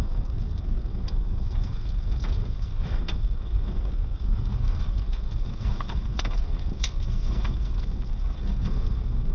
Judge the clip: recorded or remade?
remade